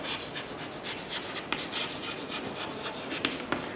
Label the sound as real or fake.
real